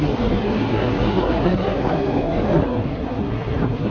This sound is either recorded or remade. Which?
remade